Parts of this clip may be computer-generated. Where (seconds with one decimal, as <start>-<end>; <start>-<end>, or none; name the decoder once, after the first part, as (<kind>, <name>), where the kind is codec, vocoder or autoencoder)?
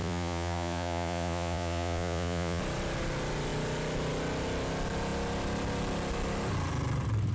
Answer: 0.0-2.6 (vocoder, Vocos)